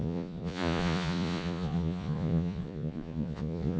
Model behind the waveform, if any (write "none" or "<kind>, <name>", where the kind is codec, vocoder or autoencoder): vocoder, Vocos